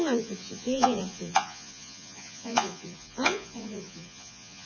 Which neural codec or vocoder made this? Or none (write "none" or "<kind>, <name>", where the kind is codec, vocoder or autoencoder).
vocoder, Vocos